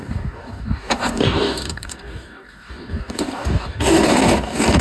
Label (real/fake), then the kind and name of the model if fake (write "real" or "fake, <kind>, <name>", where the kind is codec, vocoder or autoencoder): fake, codec, DAC